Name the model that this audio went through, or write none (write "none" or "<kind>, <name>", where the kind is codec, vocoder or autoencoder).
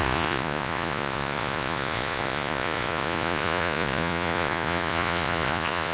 vocoder, Vocos